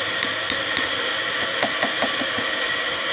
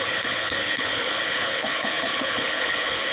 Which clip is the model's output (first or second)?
second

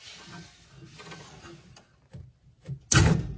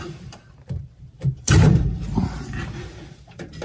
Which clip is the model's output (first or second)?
second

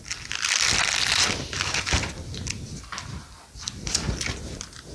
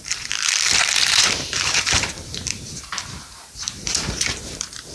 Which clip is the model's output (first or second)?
second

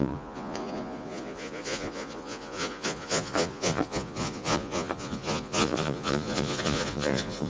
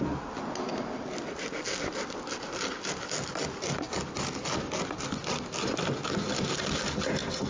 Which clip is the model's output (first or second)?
first